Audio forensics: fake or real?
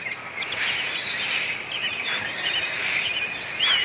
real